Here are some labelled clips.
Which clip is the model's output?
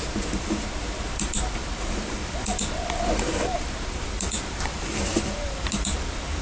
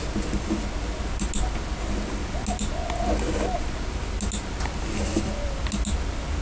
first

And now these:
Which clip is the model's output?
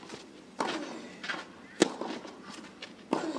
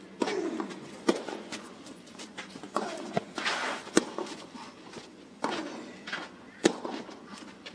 second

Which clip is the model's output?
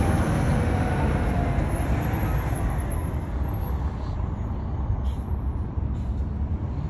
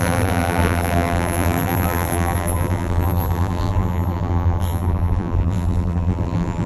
second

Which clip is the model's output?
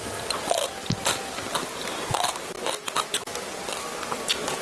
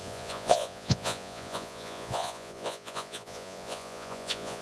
second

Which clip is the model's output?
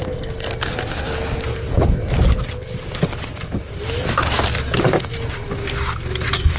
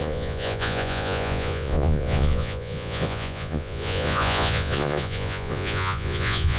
second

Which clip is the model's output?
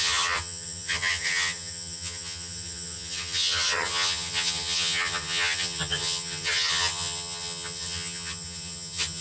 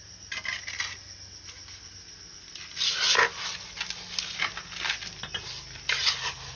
first